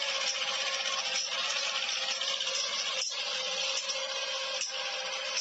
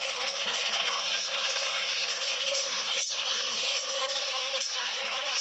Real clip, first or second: first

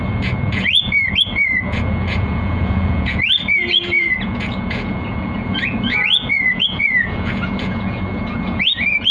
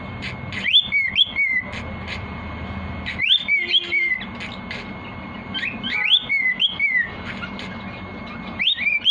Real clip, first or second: second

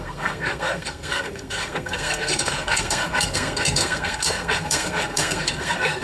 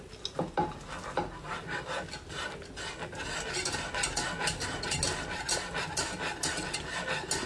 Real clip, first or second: second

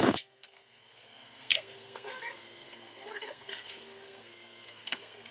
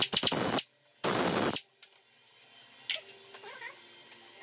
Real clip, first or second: second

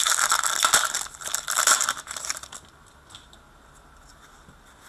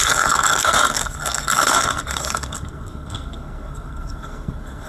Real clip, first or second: first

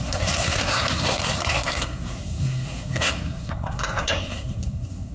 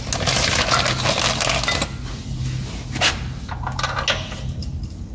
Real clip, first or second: second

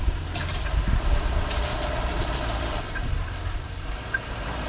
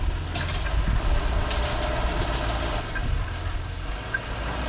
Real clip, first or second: second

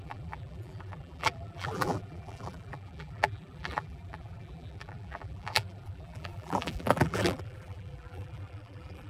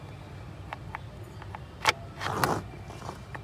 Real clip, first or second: second